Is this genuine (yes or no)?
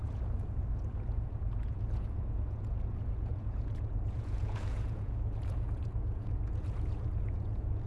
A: no